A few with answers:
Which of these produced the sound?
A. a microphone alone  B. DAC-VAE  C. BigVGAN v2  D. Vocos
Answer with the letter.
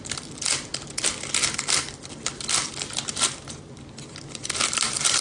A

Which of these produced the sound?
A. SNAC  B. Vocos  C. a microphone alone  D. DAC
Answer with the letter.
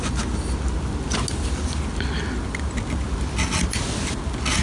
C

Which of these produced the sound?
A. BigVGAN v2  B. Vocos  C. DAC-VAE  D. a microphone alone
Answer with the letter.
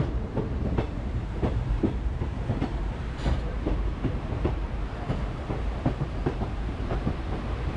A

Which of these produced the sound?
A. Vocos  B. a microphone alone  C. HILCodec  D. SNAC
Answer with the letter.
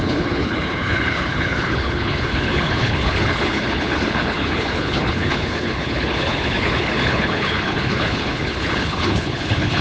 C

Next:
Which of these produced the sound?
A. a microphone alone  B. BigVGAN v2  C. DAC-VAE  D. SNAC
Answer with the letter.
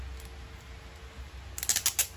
A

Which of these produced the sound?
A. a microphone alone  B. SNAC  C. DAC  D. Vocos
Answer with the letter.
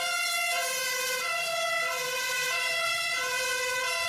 A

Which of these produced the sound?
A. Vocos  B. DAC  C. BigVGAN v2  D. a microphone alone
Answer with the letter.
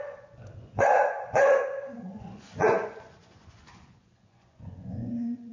A